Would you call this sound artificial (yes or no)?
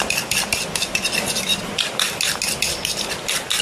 no